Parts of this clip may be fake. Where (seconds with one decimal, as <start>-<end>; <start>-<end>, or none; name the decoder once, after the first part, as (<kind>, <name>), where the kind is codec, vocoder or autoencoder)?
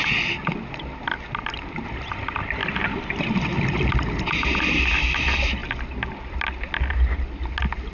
none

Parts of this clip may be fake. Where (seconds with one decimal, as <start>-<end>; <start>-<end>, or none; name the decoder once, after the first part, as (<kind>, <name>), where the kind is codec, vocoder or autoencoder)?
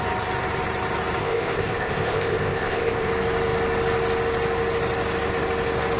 1.2-3.1 (codec, ZipCodec)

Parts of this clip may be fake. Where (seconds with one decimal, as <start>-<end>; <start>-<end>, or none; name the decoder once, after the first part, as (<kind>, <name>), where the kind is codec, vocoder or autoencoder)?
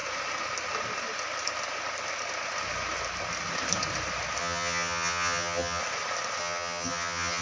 4.4-5.8 (vocoder, HiFi-GAN); 6.4-7.4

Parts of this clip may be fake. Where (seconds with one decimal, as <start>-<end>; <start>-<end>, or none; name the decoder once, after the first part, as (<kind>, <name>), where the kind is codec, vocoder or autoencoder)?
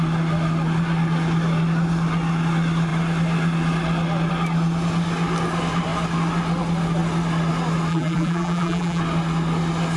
7.9-9.0 (vocoder, BigVGAN v2)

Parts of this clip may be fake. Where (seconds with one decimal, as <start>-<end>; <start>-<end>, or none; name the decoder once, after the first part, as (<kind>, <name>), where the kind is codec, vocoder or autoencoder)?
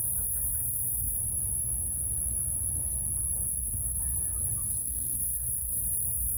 3.5-4.0 (codec, SNAC); 4.8-5.7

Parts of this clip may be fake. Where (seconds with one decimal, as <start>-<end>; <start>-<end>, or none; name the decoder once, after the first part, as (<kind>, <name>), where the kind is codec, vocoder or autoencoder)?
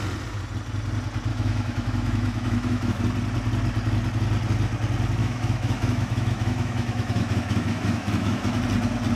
1.3-3.0 (autoencoder, DAC-VAE); 5.2-8.6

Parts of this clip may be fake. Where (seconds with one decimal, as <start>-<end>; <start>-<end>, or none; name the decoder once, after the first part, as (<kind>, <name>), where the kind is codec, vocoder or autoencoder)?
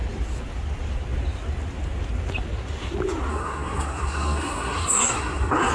3.3-5.7 (codec, SNAC)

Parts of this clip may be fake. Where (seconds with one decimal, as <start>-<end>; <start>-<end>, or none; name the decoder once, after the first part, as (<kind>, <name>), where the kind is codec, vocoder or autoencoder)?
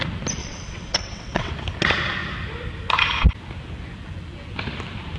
0.4-1.5 (vocoder, WaveNeXt)